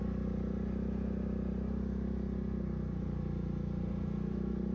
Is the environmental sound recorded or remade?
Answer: recorded